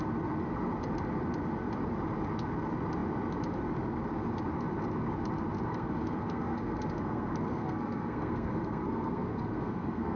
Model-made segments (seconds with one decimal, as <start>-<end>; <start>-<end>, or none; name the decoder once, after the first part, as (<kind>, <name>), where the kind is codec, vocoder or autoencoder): 5.7-10.2 (codec, SNAC)